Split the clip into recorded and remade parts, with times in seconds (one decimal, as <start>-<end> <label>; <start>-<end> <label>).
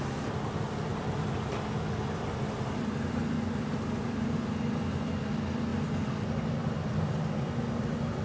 0.0-8.2 recorded